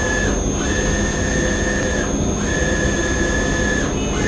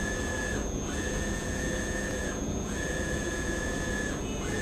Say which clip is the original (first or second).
first